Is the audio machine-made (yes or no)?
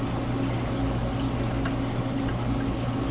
no